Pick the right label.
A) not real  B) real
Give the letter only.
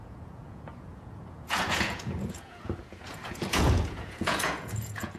A